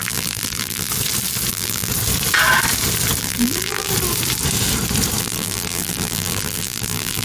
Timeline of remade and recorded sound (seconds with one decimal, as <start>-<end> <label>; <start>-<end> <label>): 0.0-0.9 remade; 0.9-1.5 recorded; 1.5-1.9 remade; 1.9-3.2 recorded; 3.2-3.9 remade; 3.9-5.2 recorded; 5.2-7.2 remade